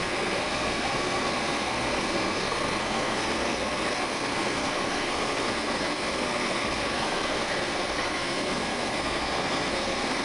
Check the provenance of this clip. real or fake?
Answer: fake